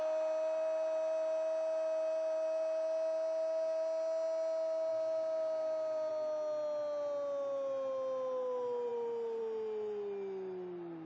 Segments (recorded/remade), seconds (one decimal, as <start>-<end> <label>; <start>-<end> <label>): 0.0-11.0 recorded

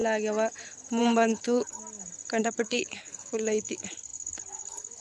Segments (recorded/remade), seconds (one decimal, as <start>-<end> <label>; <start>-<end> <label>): 0.0-1.0 recorded; 1.0-1.8 remade; 1.8-2.4 recorded; 2.4-5.0 remade

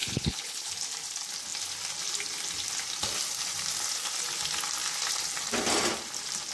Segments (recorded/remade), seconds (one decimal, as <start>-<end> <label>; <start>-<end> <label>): 0.0-0.7 remade; 0.7-6.5 recorded

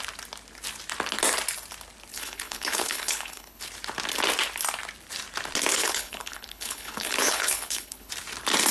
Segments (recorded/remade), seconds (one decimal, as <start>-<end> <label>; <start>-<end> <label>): 0.0-2.1 recorded; 2.1-3.6 remade; 3.6-5.8 recorded; 5.8-8.1 remade; 8.1-8.7 recorded

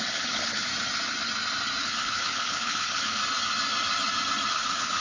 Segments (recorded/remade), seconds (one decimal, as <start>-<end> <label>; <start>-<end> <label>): 0.0-0.7 remade; 0.7-1.8 recorded; 1.8-3.2 remade; 3.2-4.5 recorded; 4.5-5.0 remade